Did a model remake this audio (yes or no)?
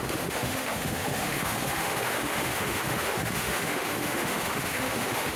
yes